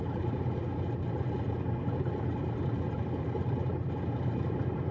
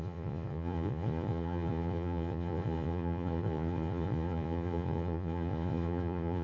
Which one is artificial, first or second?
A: second